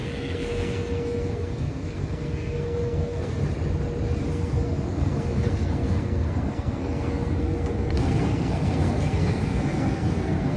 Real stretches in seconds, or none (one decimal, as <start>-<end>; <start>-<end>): 3.4-4.3